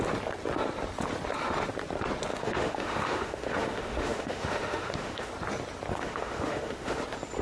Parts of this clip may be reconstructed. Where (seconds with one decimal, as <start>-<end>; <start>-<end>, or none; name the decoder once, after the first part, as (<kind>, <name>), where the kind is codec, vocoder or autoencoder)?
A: 2.3-5.3 (autoencoder, DAC-VAE); 5.9-7.0